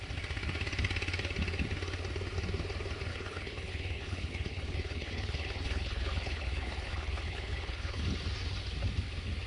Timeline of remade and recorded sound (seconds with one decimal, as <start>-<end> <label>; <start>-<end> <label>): 0.0-3.1 recorded; 3.1-8.0 remade; 8.0-9.5 recorded